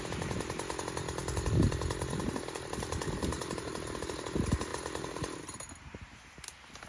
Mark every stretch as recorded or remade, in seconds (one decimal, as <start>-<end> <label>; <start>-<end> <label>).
0.0-6.9 recorded